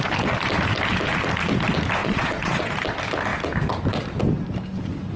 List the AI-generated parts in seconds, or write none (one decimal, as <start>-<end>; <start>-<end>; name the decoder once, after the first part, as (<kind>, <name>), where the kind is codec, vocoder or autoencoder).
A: 2.0-2.7 (vocoder, Vocos)